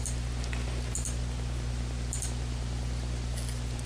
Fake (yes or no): no